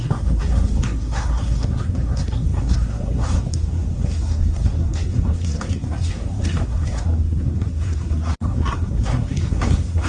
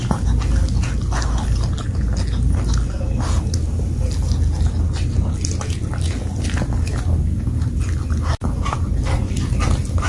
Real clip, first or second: second